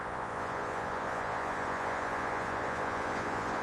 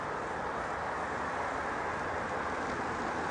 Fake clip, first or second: first